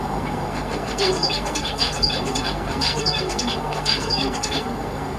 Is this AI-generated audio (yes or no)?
yes